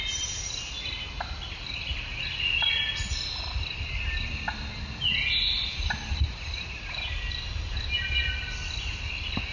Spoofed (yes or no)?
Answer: no